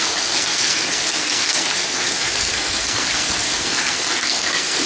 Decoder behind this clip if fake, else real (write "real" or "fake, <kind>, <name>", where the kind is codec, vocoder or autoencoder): fake, codec, SNAC